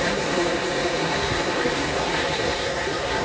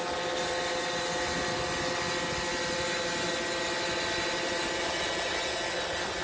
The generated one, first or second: first